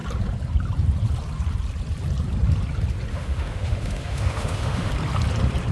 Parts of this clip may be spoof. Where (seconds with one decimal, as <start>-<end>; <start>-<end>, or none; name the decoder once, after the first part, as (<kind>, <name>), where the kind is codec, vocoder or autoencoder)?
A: 3.1-4.9 (autoencoder, DAC-VAE)

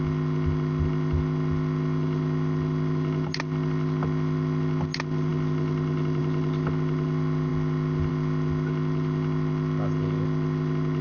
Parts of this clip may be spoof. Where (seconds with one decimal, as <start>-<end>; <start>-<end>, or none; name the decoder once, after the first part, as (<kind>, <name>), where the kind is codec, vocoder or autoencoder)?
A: none

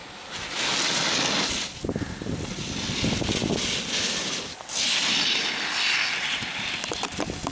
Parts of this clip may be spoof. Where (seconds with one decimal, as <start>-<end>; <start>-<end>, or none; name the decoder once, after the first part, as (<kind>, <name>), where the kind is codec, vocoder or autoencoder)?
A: none

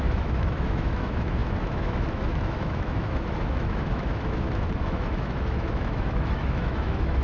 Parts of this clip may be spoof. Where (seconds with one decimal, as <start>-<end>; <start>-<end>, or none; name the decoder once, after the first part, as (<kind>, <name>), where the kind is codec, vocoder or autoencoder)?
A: 0.0-7.2 (autoencoder, DAC-VAE)